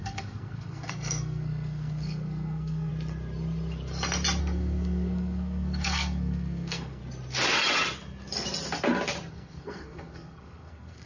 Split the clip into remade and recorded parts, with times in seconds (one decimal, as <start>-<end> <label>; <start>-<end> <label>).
0.0-2.9 remade; 2.9-4.4 recorded; 4.4-7.0 remade; 7.0-9.3 recorded; 9.3-11.1 remade